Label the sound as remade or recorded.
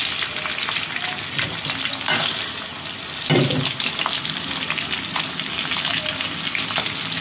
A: recorded